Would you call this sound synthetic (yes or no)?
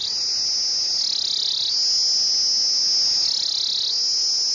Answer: no